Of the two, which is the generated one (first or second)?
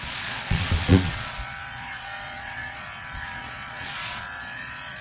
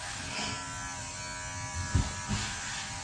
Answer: first